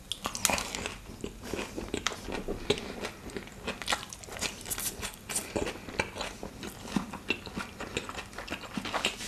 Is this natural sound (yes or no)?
yes